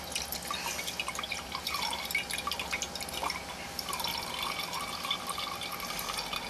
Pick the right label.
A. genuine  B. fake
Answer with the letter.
A